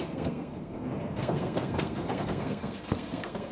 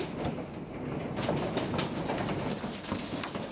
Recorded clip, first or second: second